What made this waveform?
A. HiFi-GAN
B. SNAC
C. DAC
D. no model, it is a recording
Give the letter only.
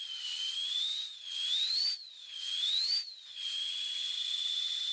A